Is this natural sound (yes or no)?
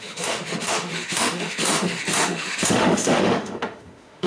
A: no